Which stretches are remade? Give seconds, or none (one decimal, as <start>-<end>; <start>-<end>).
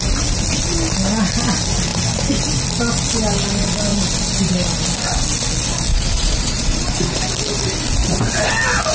5.9-7.2